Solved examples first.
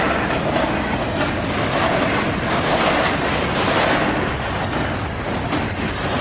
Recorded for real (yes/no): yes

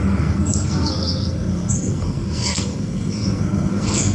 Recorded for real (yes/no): no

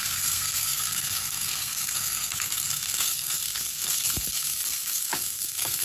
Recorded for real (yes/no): no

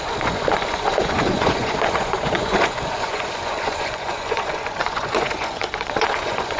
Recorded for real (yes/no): no